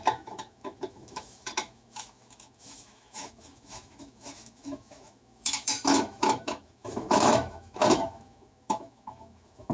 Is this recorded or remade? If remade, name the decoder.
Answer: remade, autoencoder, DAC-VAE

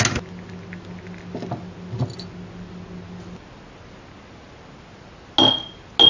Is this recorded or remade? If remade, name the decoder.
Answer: recorded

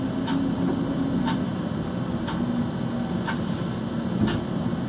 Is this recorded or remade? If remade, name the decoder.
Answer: recorded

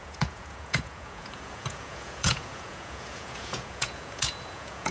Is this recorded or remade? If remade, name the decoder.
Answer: remade, vocoder, Vocos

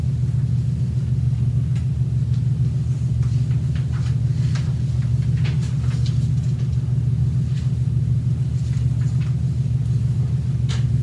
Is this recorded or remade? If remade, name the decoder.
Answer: recorded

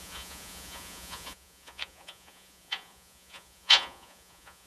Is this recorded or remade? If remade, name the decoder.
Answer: remade, vocoder, Vocos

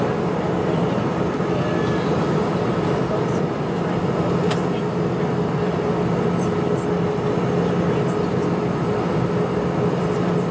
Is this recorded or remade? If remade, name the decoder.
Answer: recorded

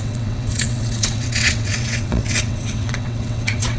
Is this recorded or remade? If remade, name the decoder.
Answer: remade, vocoder, WaveNeXt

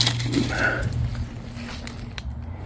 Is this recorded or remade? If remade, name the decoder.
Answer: recorded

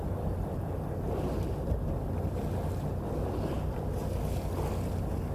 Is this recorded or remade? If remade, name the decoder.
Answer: recorded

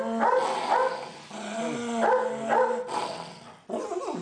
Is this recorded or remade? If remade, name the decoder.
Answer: recorded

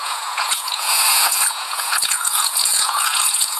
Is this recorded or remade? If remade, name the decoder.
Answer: remade, vocoder, Vocos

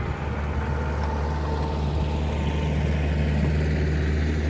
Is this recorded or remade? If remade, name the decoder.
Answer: recorded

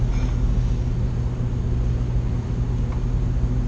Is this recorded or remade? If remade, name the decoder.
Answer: recorded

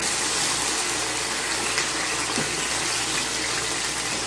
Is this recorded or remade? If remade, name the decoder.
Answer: recorded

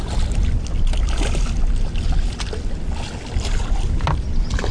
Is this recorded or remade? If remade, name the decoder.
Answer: recorded